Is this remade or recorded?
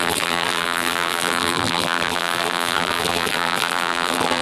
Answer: remade